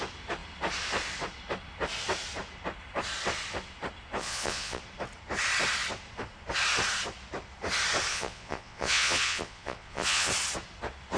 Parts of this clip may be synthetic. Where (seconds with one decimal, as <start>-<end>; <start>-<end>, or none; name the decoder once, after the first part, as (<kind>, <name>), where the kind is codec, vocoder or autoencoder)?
4.2-4.8 (vocoder, Vocos); 8.1-10.3